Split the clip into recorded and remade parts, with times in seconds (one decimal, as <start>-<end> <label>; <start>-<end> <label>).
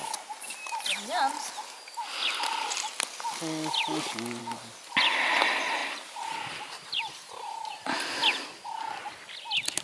0.0-5.8 recorded; 5.8-8.1 remade; 8.1-9.8 recorded